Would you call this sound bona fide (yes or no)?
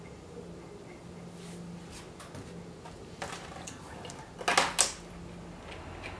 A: yes